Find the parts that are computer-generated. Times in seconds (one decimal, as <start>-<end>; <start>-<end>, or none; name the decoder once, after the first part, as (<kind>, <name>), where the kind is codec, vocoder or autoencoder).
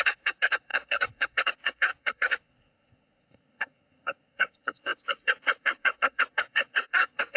0.0-7.4 (codec, SNAC)